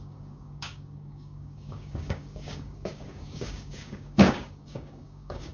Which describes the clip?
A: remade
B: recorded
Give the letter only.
A